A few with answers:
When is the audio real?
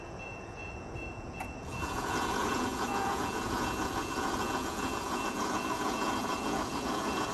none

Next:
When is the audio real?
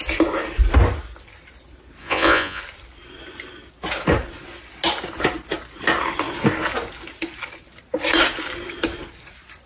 0.0-2.0; 2.6-9.7